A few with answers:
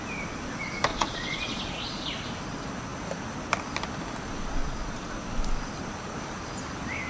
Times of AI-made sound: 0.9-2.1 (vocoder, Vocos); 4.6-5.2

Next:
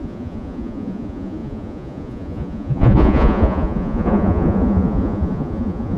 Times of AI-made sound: 0.0-6.0 (vocoder, Vocos)